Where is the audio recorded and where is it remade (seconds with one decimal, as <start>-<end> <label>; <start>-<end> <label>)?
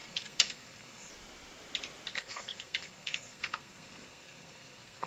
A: 0.0-1.1 remade; 1.1-2.1 recorded; 2.1-5.1 remade